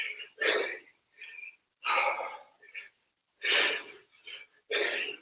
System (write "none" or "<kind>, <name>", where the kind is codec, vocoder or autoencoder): none